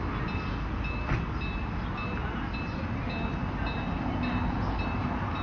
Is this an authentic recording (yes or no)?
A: yes